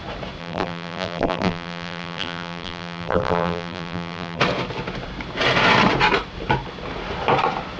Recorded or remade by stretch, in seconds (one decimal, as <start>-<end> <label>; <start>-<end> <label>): 0.0-0.4 recorded; 0.4-4.4 remade; 4.4-7.8 recorded